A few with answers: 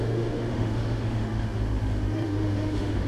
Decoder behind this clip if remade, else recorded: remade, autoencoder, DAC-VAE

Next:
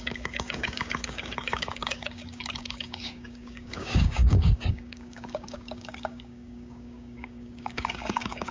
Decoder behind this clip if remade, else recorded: remade, codec, DAC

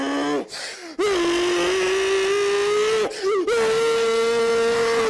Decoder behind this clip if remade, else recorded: recorded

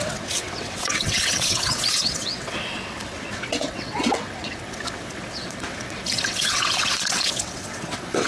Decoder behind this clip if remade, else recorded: remade, vocoder, WaveNeXt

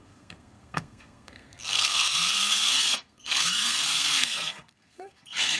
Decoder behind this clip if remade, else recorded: remade, codec, SNAC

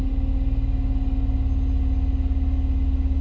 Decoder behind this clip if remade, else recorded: recorded